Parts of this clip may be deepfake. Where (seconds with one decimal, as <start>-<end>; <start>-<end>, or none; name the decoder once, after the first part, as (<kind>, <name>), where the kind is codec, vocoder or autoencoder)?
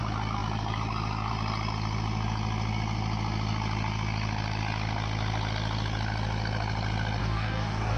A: 7.2-8.0 (codec, DAC)